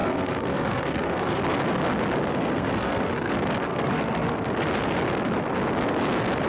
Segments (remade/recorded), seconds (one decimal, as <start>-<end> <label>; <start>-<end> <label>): 0.0-1.4 remade; 1.4-2.3 recorded; 2.3-3.3 remade; 3.3-3.7 recorded; 3.7-4.5 remade; 4.5-6.5 recorded